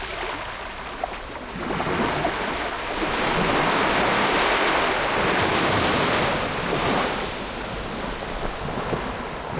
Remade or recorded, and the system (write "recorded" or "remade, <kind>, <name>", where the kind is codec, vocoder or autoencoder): recorded